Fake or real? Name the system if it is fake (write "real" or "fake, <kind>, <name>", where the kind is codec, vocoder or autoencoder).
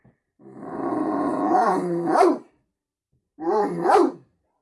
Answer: fake, vocoder, BigVGAN v2